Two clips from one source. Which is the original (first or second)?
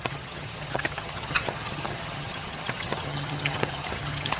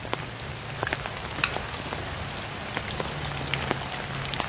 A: second